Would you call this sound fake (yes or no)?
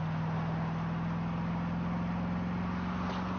no